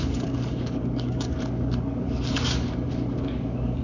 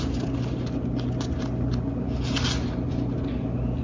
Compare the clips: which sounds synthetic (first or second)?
first